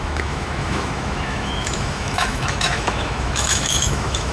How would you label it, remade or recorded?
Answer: remade